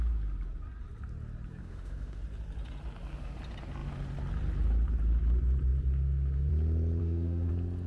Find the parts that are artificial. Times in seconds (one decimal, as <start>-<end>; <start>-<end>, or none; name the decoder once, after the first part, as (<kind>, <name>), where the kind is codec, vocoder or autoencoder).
1.6-2.2 (autoencoder, DAC-VAE); 7.0-7.5